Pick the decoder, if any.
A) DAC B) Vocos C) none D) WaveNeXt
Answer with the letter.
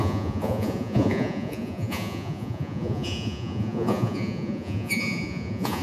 B